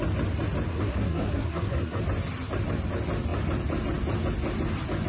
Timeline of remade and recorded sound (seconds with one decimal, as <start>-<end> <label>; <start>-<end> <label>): 0.0-0.7 recorded; 0.7-2.0 remade; 2.0-5.1 recorded